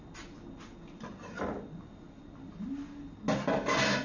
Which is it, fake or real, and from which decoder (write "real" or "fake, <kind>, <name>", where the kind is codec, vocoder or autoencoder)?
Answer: real